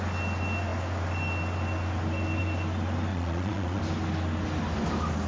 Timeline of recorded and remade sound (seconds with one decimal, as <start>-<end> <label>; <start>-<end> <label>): 0.0-3.1 recorded; 3.1-3.8 remade; 3.8-5.3 recorded